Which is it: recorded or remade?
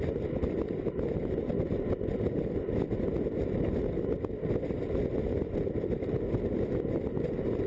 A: recorded